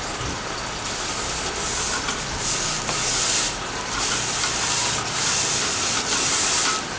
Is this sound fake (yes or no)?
no